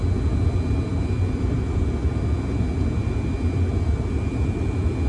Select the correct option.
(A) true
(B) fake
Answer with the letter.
A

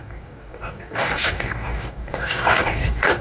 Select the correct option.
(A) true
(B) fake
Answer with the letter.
B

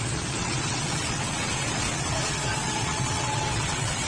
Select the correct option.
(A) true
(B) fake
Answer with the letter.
B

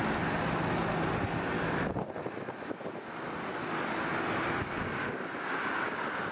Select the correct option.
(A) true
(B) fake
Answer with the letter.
A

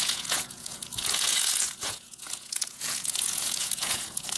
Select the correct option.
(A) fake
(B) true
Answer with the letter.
A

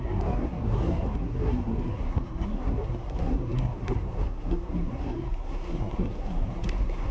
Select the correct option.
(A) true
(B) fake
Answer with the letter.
B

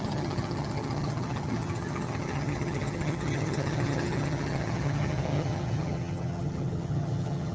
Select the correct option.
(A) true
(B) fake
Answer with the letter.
B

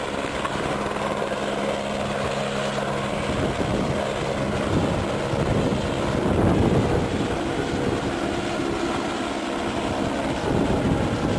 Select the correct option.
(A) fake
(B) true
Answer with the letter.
B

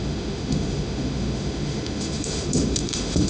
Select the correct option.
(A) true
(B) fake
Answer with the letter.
B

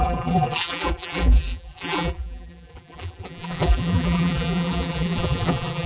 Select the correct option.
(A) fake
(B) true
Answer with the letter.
A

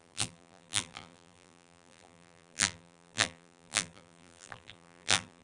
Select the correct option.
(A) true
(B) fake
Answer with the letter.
B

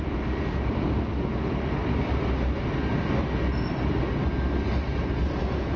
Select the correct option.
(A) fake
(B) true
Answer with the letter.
B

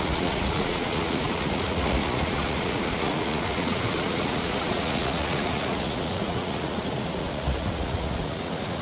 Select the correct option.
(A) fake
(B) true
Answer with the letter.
A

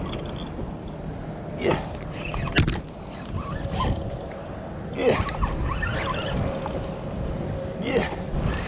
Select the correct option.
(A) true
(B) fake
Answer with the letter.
A